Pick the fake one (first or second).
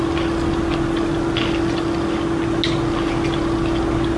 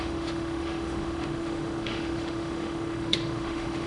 second